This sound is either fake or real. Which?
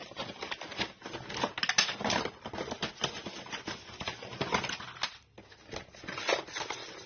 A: real